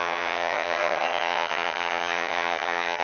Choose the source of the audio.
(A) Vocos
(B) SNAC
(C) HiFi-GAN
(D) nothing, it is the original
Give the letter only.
C